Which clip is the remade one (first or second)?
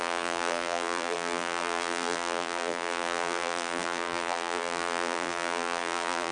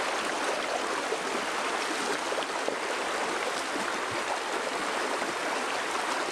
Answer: first